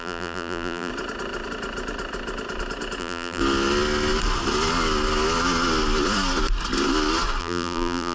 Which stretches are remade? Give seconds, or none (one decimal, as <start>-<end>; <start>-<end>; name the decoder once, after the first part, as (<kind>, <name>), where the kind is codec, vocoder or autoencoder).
0.0-0.9 (vocoder, BigVGAN v2); 3.0-3.4; 7.4-8.1